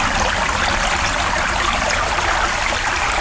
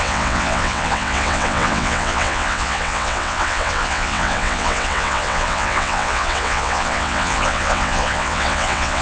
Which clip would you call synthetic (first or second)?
second